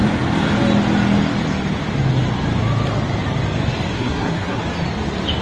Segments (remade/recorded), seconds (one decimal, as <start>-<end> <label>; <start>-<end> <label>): 0.0-3.9 recorded; 3.9-4.6 remade; 4.6-5.4 recorded